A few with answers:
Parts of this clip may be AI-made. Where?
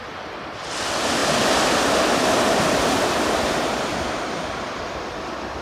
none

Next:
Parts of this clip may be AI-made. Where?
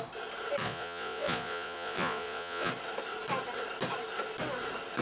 0.6-2.7 (vocoder, Vocos)